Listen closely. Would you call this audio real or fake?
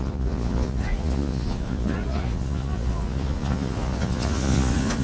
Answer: fake